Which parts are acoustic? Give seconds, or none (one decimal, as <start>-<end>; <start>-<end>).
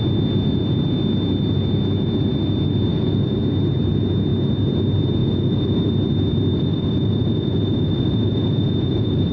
0.0-2.9; 3.4-5.2; 5.9-6.5